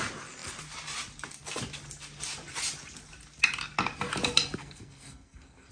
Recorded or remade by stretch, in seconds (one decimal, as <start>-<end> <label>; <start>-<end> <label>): 0.0-4.6 recorded; 4.6-5.7 remade